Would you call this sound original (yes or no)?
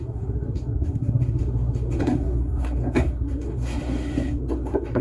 no